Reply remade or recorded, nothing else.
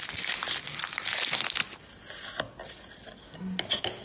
recorded